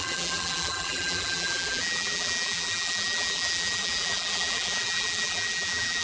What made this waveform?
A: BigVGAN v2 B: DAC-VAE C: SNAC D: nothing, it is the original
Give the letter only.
A